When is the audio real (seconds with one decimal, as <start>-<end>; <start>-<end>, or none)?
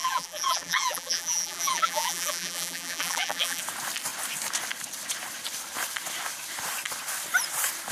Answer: 3.6-7.9